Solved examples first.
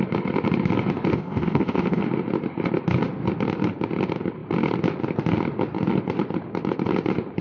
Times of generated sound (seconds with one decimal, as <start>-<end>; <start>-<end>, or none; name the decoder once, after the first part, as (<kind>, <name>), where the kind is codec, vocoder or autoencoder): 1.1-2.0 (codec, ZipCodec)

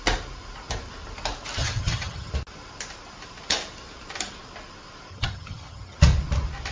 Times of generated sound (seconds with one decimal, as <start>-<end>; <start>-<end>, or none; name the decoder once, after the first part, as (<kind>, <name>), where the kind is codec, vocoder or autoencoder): 1.6-2.3 (vocoder, HiFi-GAN); 5.1-6.0

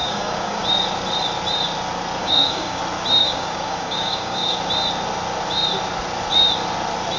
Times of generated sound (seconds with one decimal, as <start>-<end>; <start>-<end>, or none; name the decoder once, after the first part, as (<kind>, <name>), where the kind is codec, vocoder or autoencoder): 0.0-0.6 (codec, DAC); 2.2-2.8; 3.2-4.6